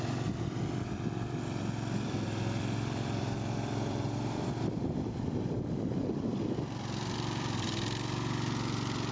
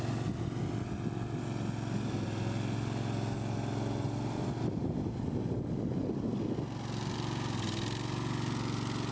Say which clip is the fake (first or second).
first